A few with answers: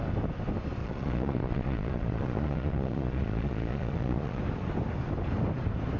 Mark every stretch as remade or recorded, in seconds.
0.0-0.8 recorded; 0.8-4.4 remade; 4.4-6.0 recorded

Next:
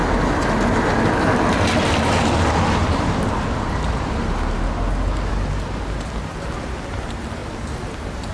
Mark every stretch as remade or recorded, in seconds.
0.0-0.7 remade; 0.7-8.3 recorded

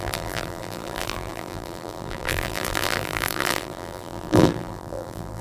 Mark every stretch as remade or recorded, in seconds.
0.0-5.4 remade

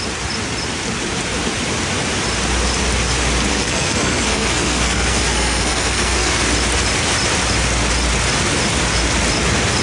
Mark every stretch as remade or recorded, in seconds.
0.0-3.5 recorded; 3.5-6.4 remade; 6.4-9.8 recorded